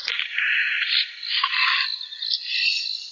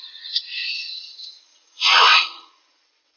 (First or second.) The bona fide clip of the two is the first